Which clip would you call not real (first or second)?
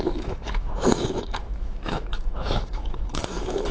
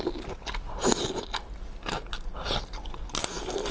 first